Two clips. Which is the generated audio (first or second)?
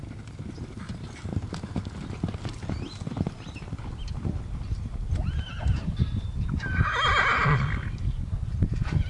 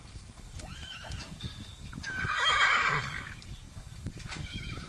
second